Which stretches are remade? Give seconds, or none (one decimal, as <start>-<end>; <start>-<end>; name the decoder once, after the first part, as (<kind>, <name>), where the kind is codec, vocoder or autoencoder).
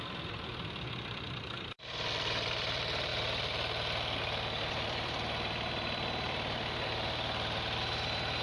0.0-3.1 (vocoder, BigVGAN v2); 4.6-8.4